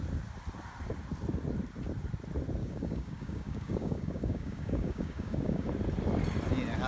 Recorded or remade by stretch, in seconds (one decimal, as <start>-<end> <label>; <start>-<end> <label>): 0.0-2.6 recorded; 2.6-5.7 remade; 5.7-6.9 recorded